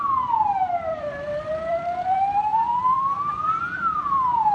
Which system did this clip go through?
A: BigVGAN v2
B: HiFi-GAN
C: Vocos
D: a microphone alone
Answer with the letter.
A